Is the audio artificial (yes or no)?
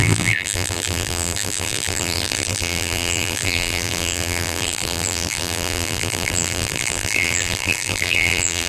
yes